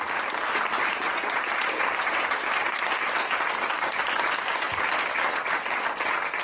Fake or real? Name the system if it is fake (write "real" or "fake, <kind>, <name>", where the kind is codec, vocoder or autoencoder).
real